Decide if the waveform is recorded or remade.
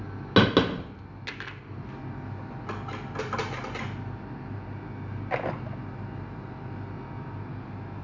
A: recorded